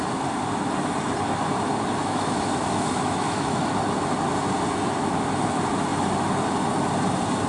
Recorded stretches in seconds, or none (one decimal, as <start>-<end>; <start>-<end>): 0.0-2.0; 3.6-7.5